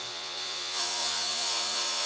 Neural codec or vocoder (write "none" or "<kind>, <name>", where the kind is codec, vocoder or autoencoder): vocoder, Vocos